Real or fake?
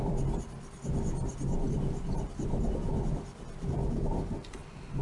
real